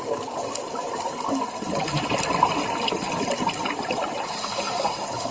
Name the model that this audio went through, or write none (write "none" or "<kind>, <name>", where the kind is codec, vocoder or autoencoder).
none